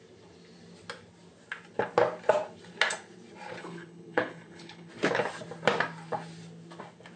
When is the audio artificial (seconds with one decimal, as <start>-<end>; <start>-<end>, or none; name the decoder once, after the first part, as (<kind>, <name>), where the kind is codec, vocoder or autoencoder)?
3.6-4.9 (codec, HILCodec)